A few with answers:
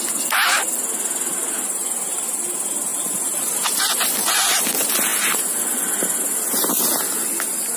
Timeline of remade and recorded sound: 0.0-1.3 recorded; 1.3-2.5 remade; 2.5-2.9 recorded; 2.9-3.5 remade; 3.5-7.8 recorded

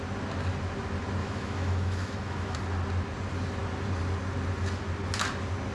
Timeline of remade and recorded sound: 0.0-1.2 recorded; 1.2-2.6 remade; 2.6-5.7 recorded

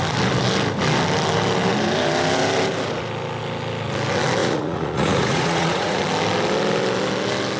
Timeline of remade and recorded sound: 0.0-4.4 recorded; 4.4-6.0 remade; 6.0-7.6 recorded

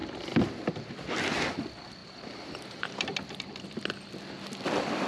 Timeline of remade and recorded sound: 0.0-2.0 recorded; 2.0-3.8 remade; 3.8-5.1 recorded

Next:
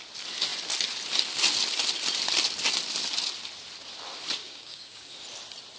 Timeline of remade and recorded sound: 0.0-4.4 recorded; 4.4-5.1 remade; 5.1-5.8 recorded

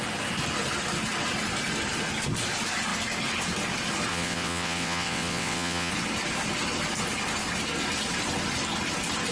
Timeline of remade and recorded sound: 0.0-4.1 recorded; 4.1-5.9 remade; 5.9-9.3 recorded

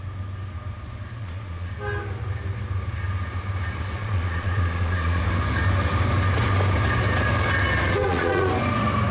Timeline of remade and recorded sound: 0.0-1.2 recorded; 1.2-1.7 remade; 1.7-4.0 recorded; 4.0-5.2 remade; 5.2-8.0 recorded; 8.0-8.5 remade; 8.5-9.1 recorded